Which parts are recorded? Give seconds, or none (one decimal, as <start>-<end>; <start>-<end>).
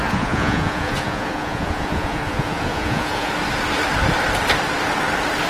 3.3-5.5